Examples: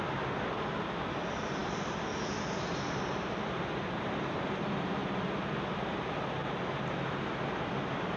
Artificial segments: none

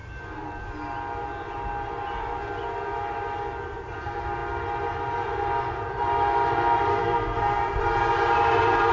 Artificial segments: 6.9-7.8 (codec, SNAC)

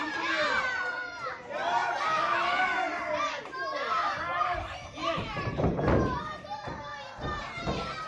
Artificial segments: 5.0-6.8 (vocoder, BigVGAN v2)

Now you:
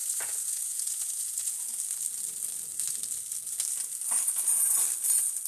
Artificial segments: 0.0-1.8 (vocoder, Vocos)